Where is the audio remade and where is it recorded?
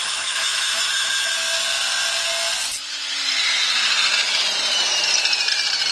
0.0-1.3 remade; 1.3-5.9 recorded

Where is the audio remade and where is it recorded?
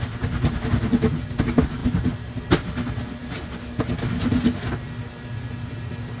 0.0-6.2 recorded